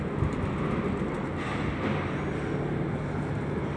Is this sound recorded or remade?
recorded